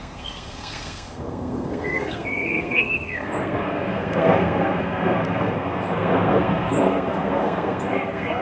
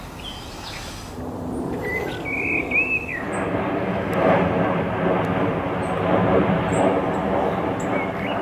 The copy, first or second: first